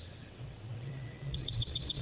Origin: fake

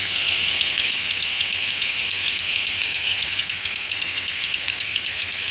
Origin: fake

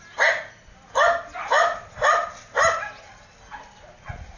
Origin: real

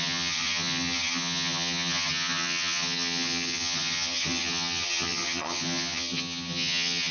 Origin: fake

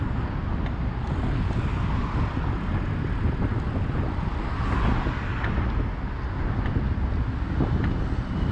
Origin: real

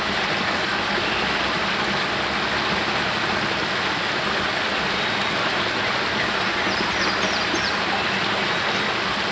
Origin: real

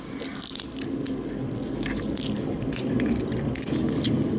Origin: real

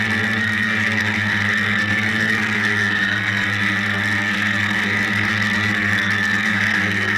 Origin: fake